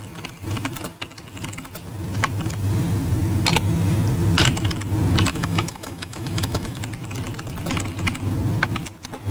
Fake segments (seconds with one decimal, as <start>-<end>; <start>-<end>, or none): 5.3-6.8